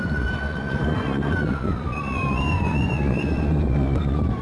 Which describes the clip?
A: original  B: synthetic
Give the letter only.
B